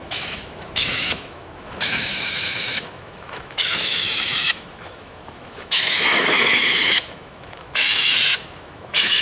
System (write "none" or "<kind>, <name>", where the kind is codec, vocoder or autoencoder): autoencoder, DAC-VAE